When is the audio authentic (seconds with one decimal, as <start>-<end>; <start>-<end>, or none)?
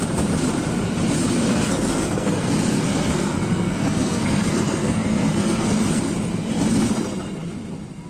0.0-1.5; 6.0-8.1